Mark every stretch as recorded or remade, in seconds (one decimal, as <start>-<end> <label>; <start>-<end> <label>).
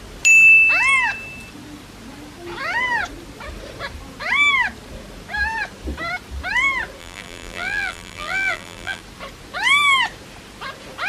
0.0-7.0 recorded; 7.0-9.0 remade; 9.0-11.1 recorded